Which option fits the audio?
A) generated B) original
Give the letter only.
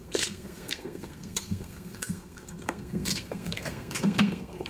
A